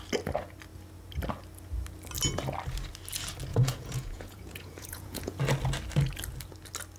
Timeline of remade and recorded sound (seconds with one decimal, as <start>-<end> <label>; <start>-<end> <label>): 0.0-3.5 recorded; 3.5-5.4 remade; 5.4-7.0 recorded